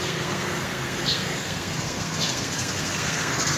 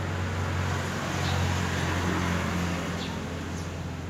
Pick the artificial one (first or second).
first